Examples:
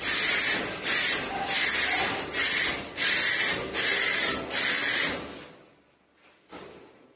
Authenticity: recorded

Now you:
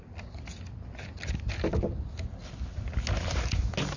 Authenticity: recorded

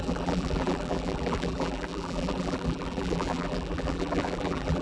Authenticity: remade